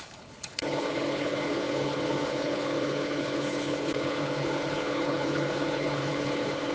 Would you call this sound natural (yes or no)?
no